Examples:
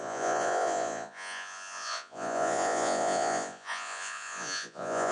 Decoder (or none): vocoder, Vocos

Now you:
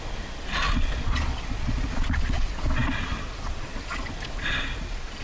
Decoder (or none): vocoder, Vocos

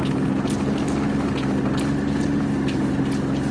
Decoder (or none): none